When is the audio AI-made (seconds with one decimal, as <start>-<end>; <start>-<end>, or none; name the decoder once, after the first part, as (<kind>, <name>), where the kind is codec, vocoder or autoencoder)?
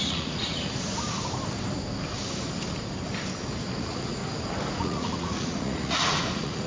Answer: 0.0-0.9 (vocoder, Vocos); 3.8-4.2; 4.7-6.7